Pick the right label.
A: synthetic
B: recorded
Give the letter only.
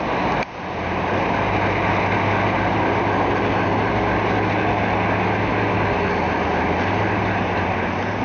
B